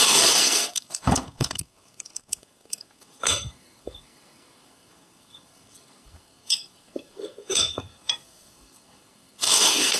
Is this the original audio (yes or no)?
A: no